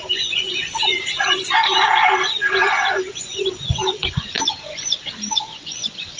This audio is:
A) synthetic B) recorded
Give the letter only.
A